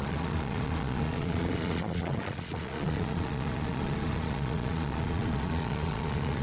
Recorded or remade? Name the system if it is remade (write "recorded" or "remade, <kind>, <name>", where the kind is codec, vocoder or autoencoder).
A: remade, vocoder, Vocos